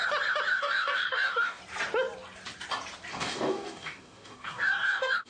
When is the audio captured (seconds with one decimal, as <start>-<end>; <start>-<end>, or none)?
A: 0.0-0.5; 1.6-3.1